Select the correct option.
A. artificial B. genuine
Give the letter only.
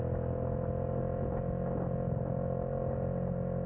B